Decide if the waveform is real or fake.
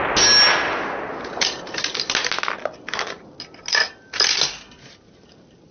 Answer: real